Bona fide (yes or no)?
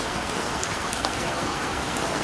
no